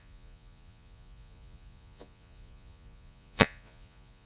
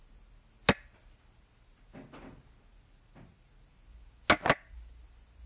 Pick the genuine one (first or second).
second